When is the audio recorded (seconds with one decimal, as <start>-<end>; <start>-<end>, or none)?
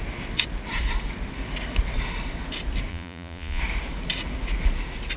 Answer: 0.0-2.9; 3.6-5.2